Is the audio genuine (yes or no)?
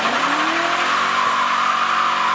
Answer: yes